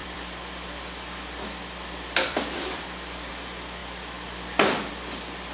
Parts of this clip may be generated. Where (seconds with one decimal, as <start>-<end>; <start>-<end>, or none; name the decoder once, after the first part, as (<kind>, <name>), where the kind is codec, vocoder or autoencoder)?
0.0-3.3 (vocoder, BigVGAN v2); 3.8-4.9